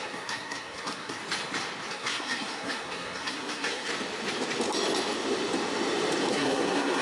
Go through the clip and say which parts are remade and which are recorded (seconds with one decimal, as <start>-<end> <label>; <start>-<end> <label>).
0.0-1.2 remade; 1.2-1.9 recorded; 1.9-3.9 remade; 3.9-6.3 recorded; 6.3-7.0 remade

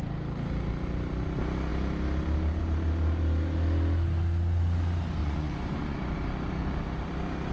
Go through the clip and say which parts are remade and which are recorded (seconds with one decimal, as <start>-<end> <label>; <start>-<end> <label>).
0.0-5.2 recorded; 5.2-6.0 remade; 6.0-7.5 recorded

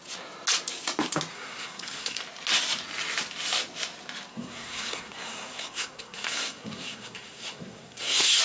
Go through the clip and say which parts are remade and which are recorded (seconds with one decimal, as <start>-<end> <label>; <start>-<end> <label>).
0.0-1.3 recorded; 1.3-2.2 remade; 2.2-4.3 recorded; 4.3-8.4 remade

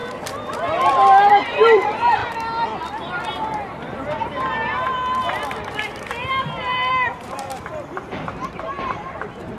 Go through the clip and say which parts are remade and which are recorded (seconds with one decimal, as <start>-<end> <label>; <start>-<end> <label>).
0.0-1.3 recorded; 1.3-2.2 remade; 2.2-6.9 recorded; 6.9-9.6 remade

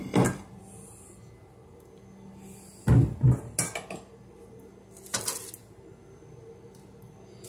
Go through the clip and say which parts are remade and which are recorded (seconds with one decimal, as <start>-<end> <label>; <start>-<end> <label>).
0.0-7.5 recorded